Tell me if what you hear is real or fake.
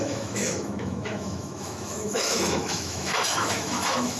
fake